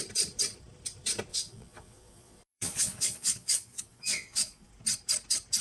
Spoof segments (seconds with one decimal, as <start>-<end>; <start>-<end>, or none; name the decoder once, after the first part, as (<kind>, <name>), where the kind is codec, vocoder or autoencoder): 1.3-4.7 (vocoder, Vocos)